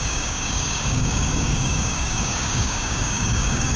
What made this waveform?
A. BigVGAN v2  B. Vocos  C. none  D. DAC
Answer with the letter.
D